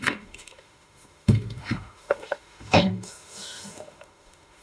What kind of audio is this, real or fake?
fake